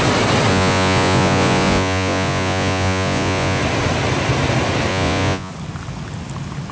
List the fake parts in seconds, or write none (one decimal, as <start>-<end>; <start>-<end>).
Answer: 0.5-3.6; 4.9-5.5